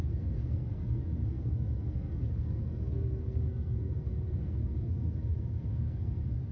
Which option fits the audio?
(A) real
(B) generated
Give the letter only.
B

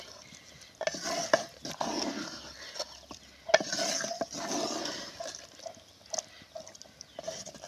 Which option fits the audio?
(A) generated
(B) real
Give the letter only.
B